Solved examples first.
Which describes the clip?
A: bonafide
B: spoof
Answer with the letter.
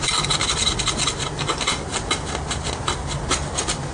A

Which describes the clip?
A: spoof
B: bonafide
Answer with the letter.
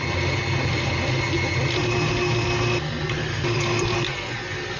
B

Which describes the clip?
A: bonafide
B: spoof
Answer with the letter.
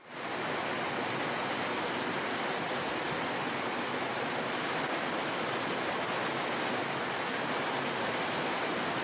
A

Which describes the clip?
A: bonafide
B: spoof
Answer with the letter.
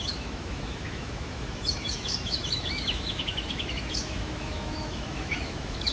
B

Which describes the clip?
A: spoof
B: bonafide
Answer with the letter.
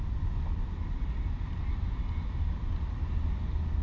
B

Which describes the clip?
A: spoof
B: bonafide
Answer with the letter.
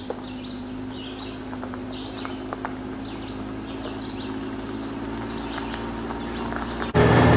B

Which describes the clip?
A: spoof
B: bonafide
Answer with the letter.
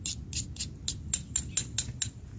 B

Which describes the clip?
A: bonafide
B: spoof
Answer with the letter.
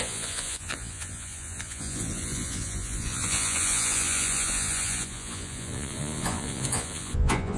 B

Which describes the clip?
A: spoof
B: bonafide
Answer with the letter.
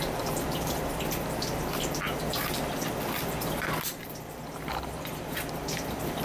A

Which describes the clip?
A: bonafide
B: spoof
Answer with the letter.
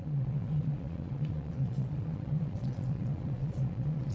B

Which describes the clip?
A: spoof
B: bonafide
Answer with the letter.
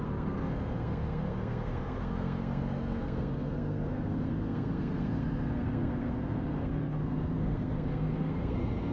A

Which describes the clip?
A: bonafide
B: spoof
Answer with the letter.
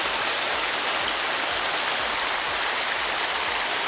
A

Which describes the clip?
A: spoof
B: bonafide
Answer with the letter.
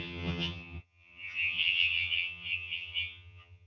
A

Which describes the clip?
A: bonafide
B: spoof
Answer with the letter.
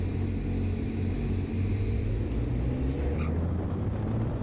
A